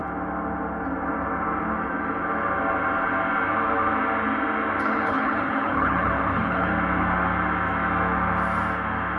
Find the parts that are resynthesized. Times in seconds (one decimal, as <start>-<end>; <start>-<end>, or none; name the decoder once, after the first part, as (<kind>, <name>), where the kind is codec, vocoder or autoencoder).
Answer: 4.8-6.7 (codec, HILCodec)

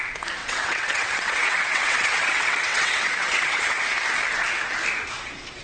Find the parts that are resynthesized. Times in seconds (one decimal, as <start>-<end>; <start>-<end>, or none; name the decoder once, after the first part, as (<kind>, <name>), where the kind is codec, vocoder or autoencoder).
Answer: 0.4-3.8 (vocoder, WaveNeXt)

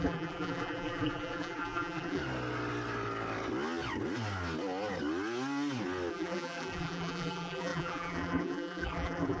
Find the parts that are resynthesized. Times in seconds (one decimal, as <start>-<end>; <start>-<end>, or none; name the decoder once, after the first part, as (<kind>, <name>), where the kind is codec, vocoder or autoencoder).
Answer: 0.0-2.2 (vocoder, BigVGAN v2); 6.1-9.4

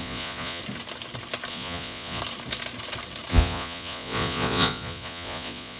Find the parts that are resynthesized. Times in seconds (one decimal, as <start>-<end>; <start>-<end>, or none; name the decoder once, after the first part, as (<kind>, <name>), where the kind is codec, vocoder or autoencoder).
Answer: 0.0-0.6 (vocoder, Vocos); 1.5-2.2; 3.3-5.8

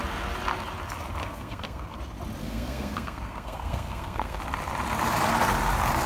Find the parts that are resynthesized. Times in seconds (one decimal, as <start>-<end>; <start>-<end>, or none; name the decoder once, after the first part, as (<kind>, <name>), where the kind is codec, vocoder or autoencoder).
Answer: 1.2-2.0 (codec, SNAC); 2.4-4.4